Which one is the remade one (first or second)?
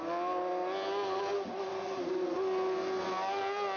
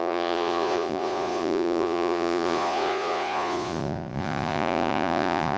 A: second